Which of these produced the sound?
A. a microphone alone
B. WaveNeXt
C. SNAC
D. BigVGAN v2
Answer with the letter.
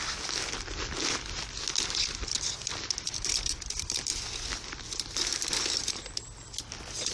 A